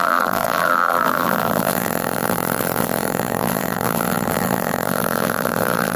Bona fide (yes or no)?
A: no